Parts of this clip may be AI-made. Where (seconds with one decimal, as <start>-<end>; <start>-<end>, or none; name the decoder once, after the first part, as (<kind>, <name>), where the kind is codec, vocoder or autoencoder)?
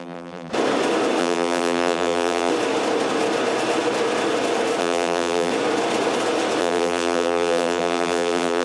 0.0-0.5 (vocoder, BigVGAN v2); 1.2-2.5; 4.8-5.5; 6.6-8.6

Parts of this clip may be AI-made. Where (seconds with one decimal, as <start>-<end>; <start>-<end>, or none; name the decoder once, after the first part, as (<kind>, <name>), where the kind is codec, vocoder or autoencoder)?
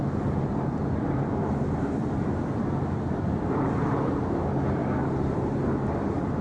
0.5-4.2 (vocoder, BigVGAN v2); 4.8-5.6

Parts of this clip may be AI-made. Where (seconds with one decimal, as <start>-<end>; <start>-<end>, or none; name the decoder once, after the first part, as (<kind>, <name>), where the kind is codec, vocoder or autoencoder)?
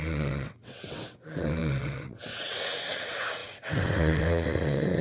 0.0-5.0 (vocoder, WaveNeXt)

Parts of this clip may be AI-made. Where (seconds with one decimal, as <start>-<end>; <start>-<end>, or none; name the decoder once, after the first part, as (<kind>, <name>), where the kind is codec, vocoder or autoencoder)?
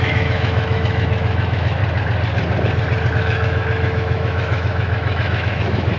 0.0-1.8 (autoencoder, DAC-VAE); 3.1-6.0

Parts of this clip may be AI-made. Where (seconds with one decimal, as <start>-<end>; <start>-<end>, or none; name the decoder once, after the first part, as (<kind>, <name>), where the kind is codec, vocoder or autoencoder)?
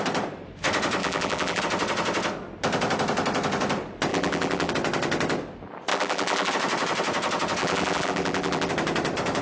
1.0-1.6 (vocoder, BigVGAN v2); 4.1-4.7; 5.9-6.5; 7.6-8.7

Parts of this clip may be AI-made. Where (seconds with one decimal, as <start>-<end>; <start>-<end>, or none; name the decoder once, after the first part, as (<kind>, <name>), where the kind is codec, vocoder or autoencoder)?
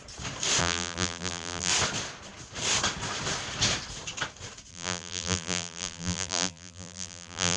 0.6-1.7 (vocoder, BigVGAN v2); 4.7-7.6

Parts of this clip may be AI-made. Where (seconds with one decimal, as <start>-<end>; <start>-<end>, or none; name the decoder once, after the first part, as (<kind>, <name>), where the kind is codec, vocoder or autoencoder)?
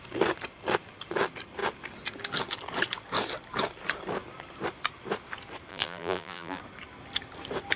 5.7-6.6 (vocoder, BigVGAN v2)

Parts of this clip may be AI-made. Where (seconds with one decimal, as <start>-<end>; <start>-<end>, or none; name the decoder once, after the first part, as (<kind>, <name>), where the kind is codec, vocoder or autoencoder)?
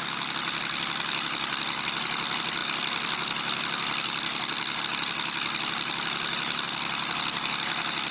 none